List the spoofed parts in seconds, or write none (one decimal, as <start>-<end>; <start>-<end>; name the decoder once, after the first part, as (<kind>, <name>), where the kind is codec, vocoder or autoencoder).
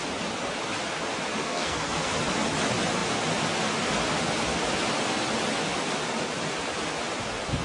1.4-2.1 (codec, SNAC)